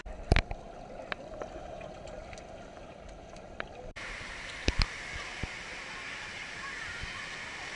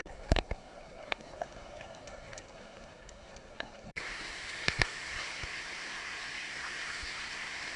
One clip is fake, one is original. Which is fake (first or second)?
second